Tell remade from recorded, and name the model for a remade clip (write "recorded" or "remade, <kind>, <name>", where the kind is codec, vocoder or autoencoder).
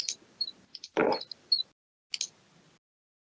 recorded